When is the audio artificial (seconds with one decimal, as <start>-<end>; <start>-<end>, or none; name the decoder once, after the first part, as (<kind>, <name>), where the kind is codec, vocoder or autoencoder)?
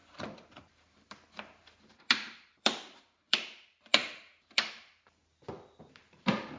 0.0-5.2 (vocoder, BigVGAN v2); 5.8-6.6